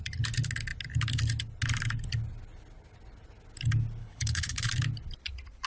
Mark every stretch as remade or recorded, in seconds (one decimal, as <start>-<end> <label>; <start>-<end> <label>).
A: 0.0-4.0 recorded; 4.0-4.7 remade; 4.7-5.7 recorded